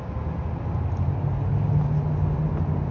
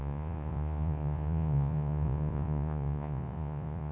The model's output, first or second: second